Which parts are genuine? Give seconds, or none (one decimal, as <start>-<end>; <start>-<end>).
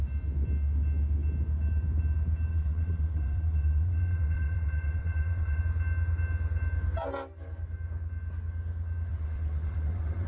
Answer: 0.0-2.5; 5.6-9.1